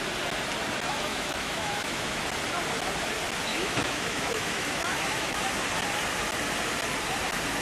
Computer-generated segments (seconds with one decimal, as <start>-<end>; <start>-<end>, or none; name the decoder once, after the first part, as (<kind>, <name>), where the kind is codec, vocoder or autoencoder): 1.1-2.2 (autoencoder, DAC-VAE); 3.5-5.4